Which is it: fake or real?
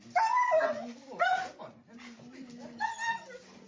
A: real